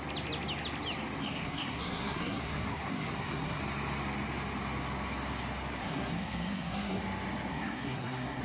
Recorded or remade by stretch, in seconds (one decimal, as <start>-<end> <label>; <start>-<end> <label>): 0.0-1.2 recorded; 1.2-3.6 remade; 3.6-5.8 recorded; 5.8-7.0 remade; 7.0-7.5 recorded; 7.5-8.4 remade